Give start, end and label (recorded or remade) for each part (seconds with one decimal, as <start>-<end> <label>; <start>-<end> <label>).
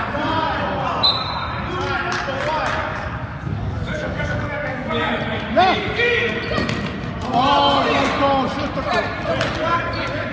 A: 0.0-2.8 recorded; 2.8-5.1 remade; 5.1-10.3 recorded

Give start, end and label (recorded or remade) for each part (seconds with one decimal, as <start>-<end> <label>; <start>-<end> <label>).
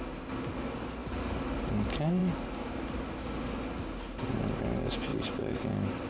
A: 0.0-6.1 recorded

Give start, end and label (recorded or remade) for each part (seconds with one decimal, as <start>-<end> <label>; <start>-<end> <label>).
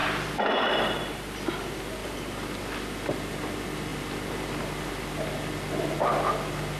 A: 0.0-2.0 recorded; 2.0-2.6 remade; 2.6-6.8 recorded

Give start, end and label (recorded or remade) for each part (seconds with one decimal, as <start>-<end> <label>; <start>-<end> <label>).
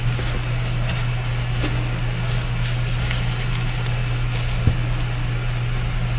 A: 0.0-6.2 recorded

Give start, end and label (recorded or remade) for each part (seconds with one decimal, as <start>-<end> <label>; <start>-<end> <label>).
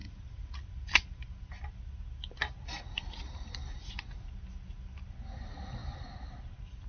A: 0.0-6.9 recorded